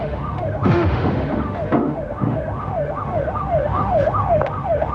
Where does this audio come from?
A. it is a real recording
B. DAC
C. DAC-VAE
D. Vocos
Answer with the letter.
C